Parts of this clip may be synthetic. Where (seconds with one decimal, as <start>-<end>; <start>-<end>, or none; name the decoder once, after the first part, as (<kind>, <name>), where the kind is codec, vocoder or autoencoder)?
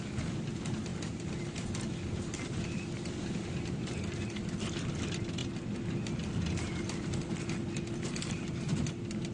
none